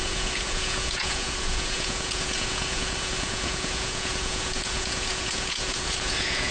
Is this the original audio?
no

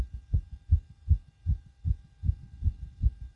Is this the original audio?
yes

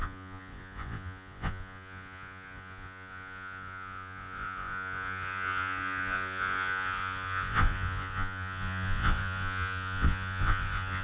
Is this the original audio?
no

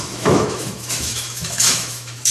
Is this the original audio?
no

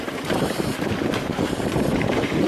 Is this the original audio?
no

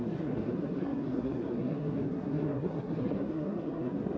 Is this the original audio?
no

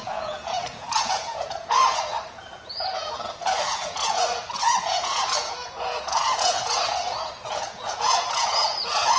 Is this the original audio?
no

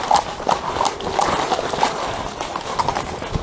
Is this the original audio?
yes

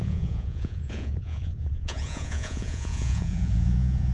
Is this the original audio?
no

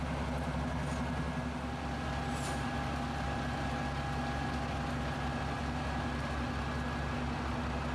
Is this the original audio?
yes